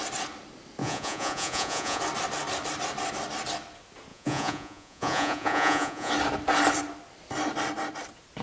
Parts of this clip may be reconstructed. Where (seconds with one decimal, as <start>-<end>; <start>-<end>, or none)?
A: 0.8-2.0; 4.1-6.1